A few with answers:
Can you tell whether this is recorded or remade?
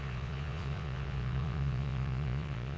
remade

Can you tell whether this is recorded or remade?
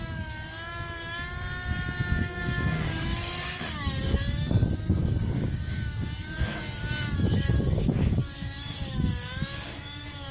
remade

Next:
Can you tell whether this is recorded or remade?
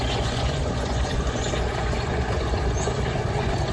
remade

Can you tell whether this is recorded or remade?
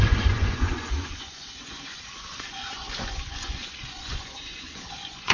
remade